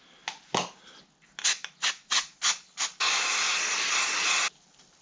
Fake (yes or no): no